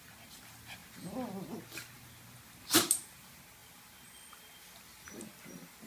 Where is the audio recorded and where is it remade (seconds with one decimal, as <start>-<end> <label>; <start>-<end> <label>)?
0.0-5.9 recorded